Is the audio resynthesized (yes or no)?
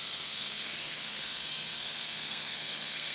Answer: yes